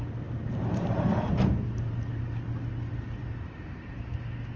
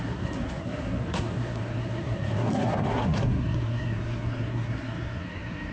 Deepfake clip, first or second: second